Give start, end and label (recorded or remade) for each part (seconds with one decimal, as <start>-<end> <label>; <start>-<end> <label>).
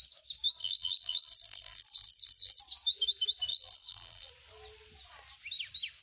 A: 0.0-0.6 recorded; 0.6-2.6 remade; 2.6-3.5 recorded; 3.5-4.3 remade; 4.3-6.0 recorded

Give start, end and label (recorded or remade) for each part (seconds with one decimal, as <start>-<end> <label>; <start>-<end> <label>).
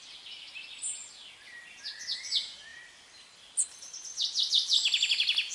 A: 0.0-5.5 recorded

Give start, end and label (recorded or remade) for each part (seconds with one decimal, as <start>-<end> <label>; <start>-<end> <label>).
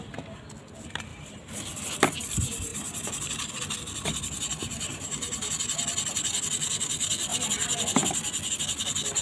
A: 0.0-1.1 recorded; 1.1-1.8 remade; 1.8-2.7 recorded; 2.7-3.5 remade; 3.5-4.6 recorded; 4.6-5.5 remade; 5.5-9.2 recorded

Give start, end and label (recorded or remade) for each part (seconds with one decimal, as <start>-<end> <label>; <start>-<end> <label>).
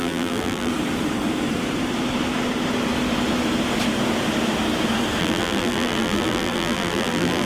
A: 0.0-0.7 remade; 0.7-5.2 recorded; 5.2-7.5 remade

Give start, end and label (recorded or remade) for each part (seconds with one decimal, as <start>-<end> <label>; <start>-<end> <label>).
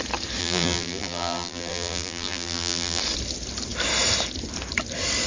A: 0.0-0.4 recorded; 0.4-3.0 remade; 3.0-5.3 recorded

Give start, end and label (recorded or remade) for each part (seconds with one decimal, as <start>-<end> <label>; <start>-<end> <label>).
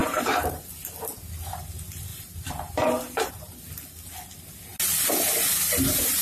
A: 0.0-0.6 remade; 0.6-2.1 recorded; 2.1-3.3 remade; 3.3-6.2 recorded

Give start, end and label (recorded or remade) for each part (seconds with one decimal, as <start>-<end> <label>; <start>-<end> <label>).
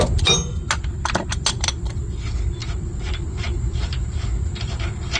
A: 0.0-2.6 recorded; 2.6-4.7 remade; 4.7-5.2 recorded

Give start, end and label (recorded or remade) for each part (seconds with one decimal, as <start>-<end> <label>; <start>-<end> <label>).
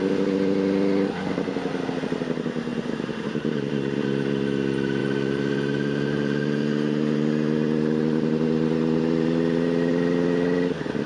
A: 0.0-2.7 recorded; 2.7-3.7 remade; 3.7-5.0 recorded; 5.0-9.9 remade; 9.9-11.1 recorded